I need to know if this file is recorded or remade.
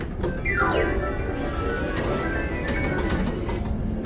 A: recorded